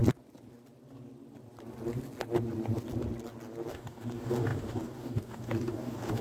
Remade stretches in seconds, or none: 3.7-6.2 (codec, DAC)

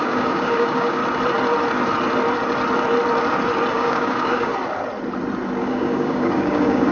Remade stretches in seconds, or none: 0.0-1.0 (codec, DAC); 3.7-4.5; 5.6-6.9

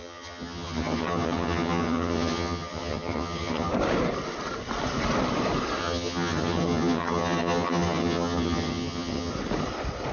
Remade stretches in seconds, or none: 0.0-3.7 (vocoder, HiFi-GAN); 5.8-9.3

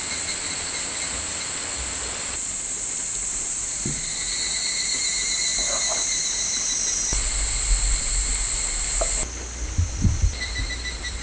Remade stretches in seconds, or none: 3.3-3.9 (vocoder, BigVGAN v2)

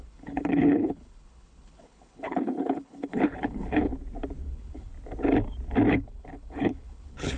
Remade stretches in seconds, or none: 0.0-3.9 (codec, HILCodec); 4.4-4.9; 5.9-7.4

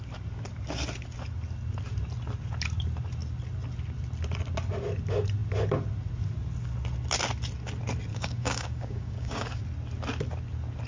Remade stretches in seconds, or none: 8.1-9.6 (codec, DAC)

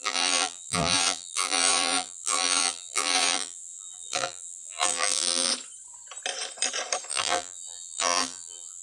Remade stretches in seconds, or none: 0.0-5.5 (vocoder, BigVGAN v2); 7.1-8.8